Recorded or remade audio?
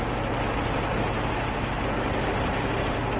recorded